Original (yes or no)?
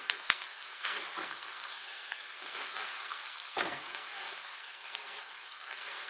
no